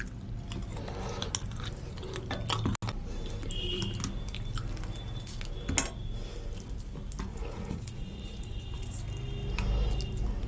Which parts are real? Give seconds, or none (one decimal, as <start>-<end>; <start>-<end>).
0.0-7.3; 9.0-10.5